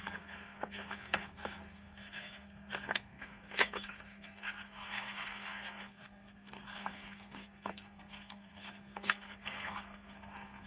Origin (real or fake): fake